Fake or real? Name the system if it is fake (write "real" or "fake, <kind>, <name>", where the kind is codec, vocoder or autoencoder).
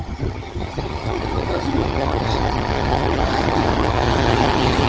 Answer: fake, vocoder, HiFi-GAN